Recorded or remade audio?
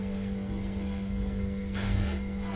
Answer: remade